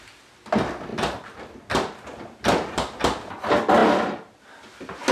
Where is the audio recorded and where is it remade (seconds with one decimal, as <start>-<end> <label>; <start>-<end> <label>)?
0.0-5.1 recorded